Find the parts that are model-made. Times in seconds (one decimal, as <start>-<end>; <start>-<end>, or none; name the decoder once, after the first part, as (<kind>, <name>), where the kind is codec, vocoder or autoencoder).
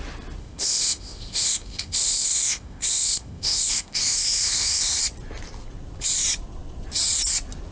0.4-5.0 (codec, ZipCodec)